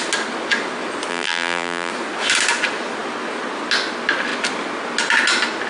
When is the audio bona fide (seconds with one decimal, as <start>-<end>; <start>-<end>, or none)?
0.0-1.1; 1.9-5.7